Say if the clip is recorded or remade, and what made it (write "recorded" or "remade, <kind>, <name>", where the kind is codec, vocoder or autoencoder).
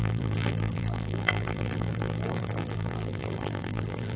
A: remade, vocoder, BigVGAN v2